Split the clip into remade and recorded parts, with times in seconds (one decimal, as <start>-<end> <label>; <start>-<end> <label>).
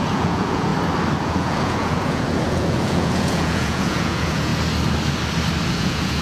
0.0-0.7 remade; 0.7-1.2 recorded; 1.2-4.5 remade; 4.5-5.7 recorded; 5.7-6.2 remade